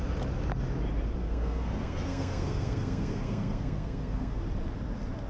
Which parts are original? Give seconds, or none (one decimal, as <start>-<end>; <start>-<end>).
0.0-1.2; 4.4-5.3